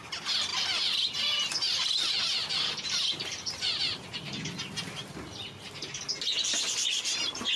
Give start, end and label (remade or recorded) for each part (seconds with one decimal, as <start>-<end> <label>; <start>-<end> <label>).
0.0-0.5 recorded; 0.5-3.8 remade; 3.8-7.6 recorded